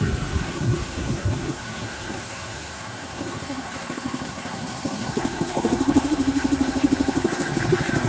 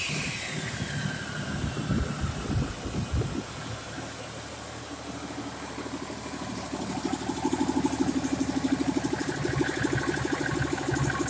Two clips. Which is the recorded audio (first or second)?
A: second